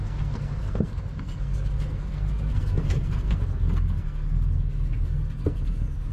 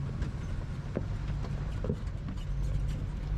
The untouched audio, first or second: second